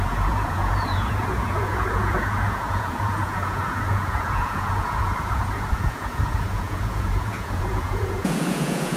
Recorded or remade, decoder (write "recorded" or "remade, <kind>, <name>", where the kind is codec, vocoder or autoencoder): remade, vocoder, Vocos